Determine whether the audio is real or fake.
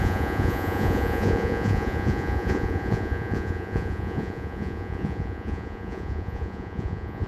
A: fake